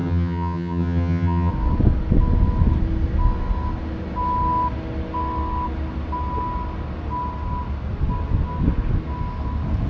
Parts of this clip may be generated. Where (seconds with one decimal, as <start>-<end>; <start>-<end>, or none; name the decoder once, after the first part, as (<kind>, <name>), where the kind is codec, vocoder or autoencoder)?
0.0-1.5 (vocoder, HiFi-GAN)